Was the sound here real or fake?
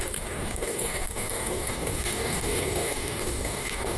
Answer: fake